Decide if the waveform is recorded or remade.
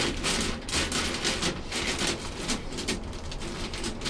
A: recorded